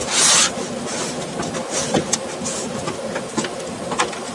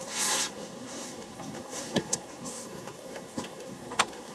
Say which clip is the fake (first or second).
second